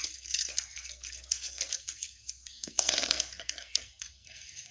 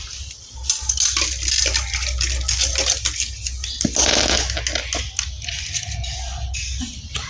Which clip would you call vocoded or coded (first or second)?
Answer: first